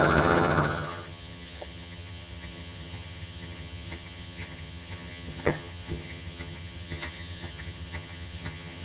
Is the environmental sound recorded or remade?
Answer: remade